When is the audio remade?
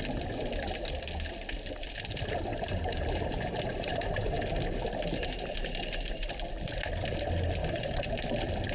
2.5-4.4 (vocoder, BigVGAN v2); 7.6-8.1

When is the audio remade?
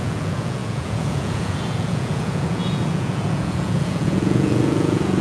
0.0-5.2 (vocoder, Vocos)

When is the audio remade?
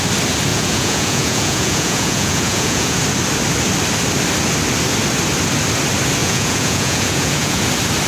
0.5-3.0 (vocoder, Vocos); 6.2-7.6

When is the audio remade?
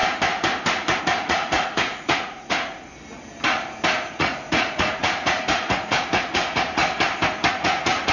1.0-2.9 (vocoder, Vocos); 4.1-6.8; 7.5-8.1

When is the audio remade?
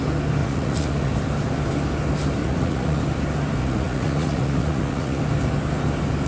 0.4-1.1 (vocoder, Vocos); 2.4-3.0; 3.6-5.2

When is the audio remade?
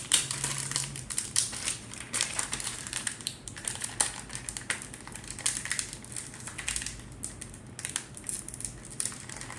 0.0-3.9 (vocoder, BigVGAN v2)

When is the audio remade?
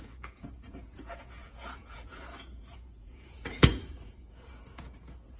0.0-5.4 (vocoder, Vocos)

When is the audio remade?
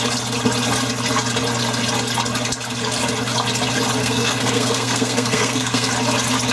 4.0-5.9 (codec, SNAC)